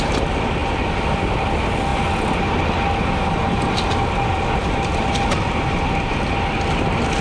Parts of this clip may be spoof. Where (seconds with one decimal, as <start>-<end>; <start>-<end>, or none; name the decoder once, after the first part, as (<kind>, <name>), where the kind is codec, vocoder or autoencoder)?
none